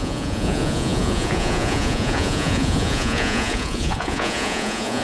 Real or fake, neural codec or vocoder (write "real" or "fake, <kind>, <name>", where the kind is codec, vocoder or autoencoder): fake, vocoder, Vocos